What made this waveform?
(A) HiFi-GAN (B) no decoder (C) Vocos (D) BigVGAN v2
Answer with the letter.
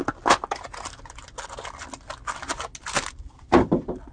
B